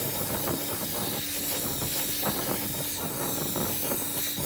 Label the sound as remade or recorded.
recorded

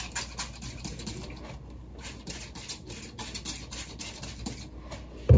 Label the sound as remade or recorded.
recorded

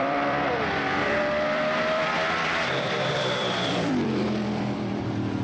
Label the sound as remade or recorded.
remade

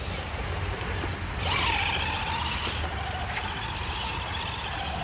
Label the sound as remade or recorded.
recorded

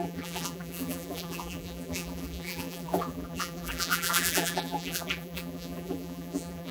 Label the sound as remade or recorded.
remade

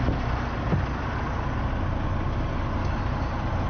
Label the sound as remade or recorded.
recorded